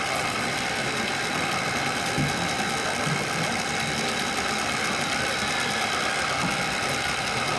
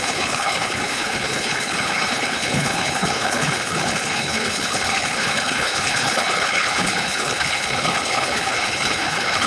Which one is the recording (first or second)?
first